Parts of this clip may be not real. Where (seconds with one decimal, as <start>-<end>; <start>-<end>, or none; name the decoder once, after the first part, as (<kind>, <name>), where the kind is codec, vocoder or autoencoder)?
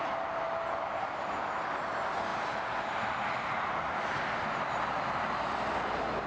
none